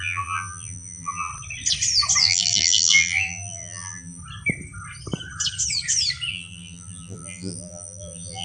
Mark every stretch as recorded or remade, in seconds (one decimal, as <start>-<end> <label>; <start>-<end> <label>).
0.0-1.3 remade; 1.3-2.2 recorded; 2.2-4.2 remade; 4.2-6.3 recorded; 6.3-8.4 remade